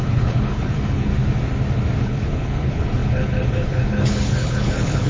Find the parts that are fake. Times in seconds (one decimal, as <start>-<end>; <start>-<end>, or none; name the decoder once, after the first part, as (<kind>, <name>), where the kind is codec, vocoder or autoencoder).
0.0-1.1 (codec, HILCodec); 2.0-5.1